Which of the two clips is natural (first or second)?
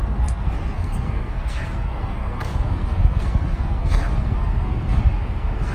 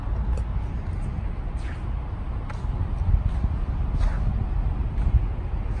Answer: second